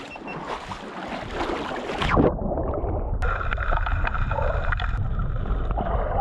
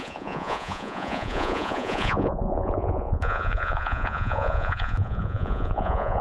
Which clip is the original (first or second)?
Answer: first